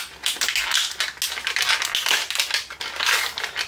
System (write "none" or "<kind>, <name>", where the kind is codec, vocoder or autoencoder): none